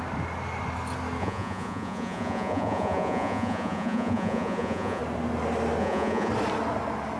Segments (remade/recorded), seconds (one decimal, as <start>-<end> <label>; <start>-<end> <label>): 0.0-1.2 recorded; 1.2-5.0 remade; 5.0-5.8 recorded; 5.8-6.3 remade; 6.3-7.2 recorded